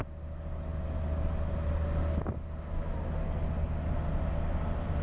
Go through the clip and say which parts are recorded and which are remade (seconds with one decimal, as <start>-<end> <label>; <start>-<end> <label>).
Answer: 0.0-5.0 recorded

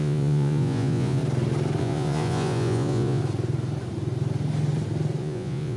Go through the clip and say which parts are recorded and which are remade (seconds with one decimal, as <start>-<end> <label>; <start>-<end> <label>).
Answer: 0.0-1.2 remade; 1.2-1.8 recorded; 1.8-3.2 remade; 3.2-5.2 recorded; 5.2-5.8 remade

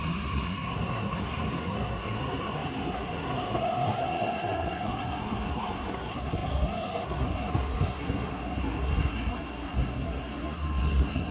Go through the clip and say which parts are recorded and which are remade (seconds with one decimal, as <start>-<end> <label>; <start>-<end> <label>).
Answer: 0.0-11.3 remade

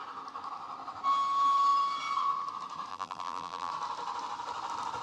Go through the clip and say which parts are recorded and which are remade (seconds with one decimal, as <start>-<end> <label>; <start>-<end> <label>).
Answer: 0.0-2.9 recorded; 2.9-3.7 remade; 3.7-5.0 recorded

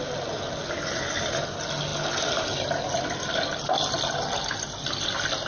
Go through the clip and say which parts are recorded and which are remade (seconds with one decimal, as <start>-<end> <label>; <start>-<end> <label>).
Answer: 0.0-5.5 recorded

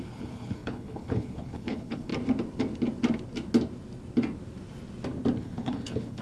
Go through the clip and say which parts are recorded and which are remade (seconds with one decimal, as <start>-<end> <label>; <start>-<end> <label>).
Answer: 0.0-2.1 remade; 2.1-5.4 recorded; 5.4-6.2 remade

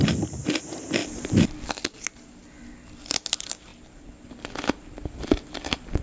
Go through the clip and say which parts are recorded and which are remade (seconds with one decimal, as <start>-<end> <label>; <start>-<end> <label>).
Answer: 0.0-6.0 recorded